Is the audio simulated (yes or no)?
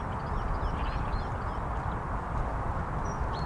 no